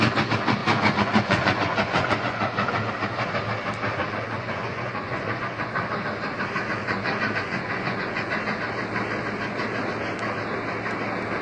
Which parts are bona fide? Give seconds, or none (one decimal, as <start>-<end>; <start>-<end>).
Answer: 0.0-0.6; 2.9-4.0; 5.7-6.8; 8.3-11.4